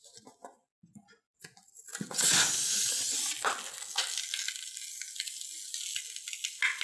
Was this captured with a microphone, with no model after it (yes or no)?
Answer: yes